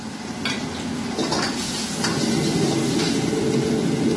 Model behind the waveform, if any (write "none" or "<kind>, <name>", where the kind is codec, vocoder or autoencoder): none